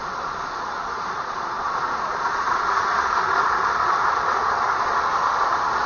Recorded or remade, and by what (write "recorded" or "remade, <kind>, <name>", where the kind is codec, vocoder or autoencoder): remade, vocoder, Vocos